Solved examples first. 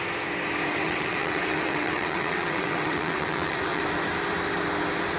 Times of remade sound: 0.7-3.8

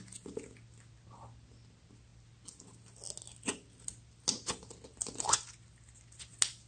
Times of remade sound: none

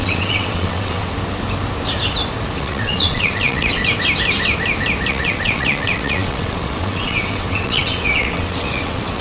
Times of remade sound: 0.0-1.1; 2.6-3.8; 5.1-9.2

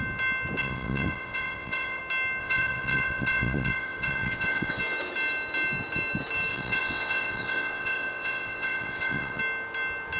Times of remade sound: 0.6-2.0; 2.4-4.8; 6.5-9.4

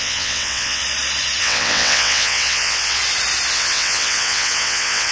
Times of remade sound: 0.0-0.8; 1.4-3.0; 3.5-5.1